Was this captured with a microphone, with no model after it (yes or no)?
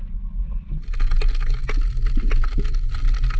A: yes